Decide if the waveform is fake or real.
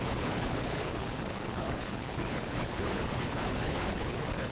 fake